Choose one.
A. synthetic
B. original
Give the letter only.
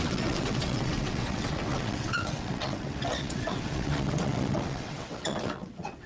A